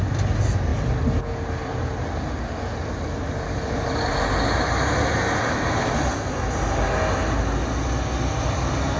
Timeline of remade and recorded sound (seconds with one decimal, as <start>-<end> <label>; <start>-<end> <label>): 0.0-9.0 recorded